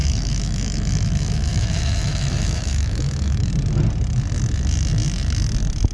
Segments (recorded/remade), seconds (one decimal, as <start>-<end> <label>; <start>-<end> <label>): 0.0-3.5 remade; 3.5-5.9 recorded